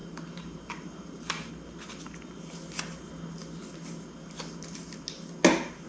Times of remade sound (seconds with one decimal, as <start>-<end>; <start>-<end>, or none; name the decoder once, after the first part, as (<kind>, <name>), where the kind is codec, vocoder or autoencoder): 0.0-1.5 (vocoder, BigVGAN v2)